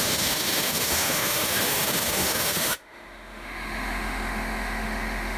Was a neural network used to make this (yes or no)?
yes